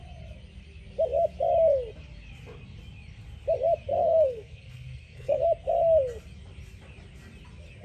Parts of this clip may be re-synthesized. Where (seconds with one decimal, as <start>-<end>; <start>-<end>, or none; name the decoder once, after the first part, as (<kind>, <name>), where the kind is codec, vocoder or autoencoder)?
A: 3.9-5.4 (codec, SNAC)